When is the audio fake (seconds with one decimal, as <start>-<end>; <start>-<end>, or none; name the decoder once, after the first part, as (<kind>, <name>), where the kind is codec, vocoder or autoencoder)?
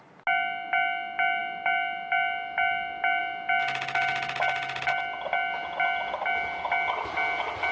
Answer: none